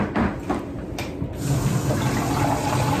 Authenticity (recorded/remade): recorded